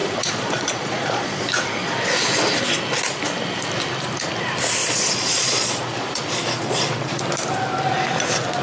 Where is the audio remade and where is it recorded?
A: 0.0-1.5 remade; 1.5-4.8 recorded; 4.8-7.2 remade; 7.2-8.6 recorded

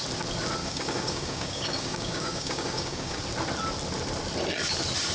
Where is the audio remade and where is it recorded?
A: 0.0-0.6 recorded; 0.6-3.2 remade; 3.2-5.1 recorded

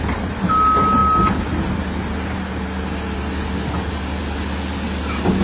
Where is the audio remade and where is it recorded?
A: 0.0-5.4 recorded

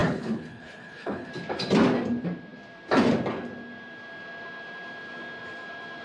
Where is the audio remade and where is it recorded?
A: 0.0-1.3 remade; 1.3-6.0 recorded

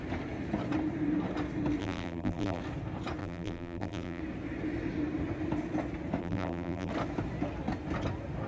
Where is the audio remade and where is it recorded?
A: 0.0-1.8 recorded; 1.8-2.6 remade; 2.6-3.2 recorded; 3.2-4.2 remade; 4.2-6.2 recorded; 6.2-6.9 remade; 6.9-8.5 recorded

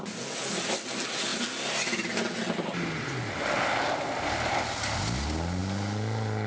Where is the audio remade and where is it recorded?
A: 0.0-6.5 recorded

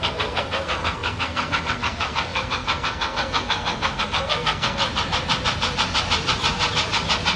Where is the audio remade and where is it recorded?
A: 0.0-4.8 remade; 4.8-7.4 recorded